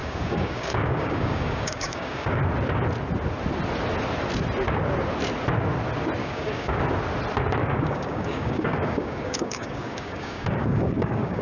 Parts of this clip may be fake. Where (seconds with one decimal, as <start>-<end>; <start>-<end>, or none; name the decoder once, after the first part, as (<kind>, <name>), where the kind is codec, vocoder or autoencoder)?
0.0-2.4 (codec, DAC); 6.2-6.8; 7.6-11.4